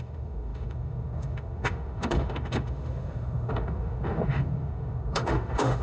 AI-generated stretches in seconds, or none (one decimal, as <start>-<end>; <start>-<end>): 0.0-5.8